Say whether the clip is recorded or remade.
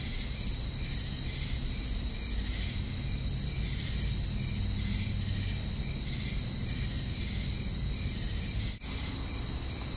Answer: recorded